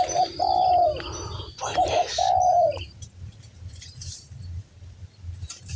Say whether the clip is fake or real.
fake